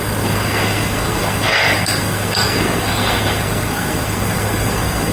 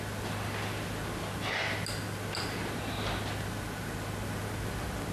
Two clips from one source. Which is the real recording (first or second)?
second